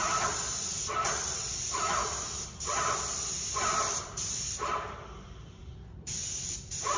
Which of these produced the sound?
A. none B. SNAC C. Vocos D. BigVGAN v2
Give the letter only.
D